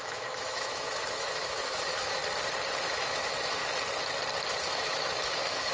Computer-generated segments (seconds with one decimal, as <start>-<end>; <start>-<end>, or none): 0.0-2.2; 2.8-3.6; 4.6-5.7